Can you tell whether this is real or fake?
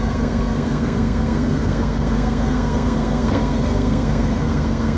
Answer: fake